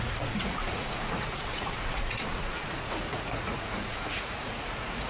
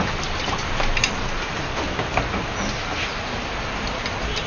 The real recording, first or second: second